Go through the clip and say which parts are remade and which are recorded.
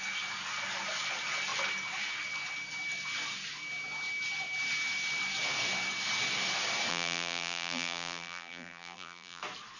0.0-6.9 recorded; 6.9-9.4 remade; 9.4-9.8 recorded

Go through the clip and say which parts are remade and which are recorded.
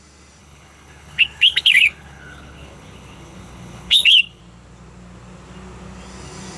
0.0-0.4 recorded; 0.4-4.4 remade; 4.4-6.6 recorded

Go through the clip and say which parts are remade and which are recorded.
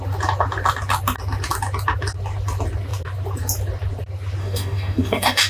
0.0-4.4 recorded; 4.4-5.5 remade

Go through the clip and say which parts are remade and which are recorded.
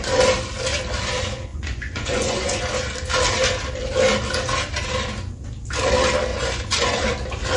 0.0-1.5 recorded; 1.5-2.6 remade; 2.6-6.3 recorded; 6.3-7.0 remade; 7.0-7.6 recorded